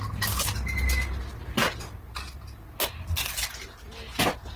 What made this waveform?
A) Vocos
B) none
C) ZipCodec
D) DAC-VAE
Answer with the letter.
B